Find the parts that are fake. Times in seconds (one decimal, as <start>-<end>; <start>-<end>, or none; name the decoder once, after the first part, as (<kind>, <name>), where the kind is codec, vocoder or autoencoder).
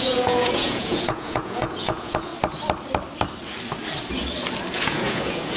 0.0-2.3 (vocoder, Vocos); 4.7-5.6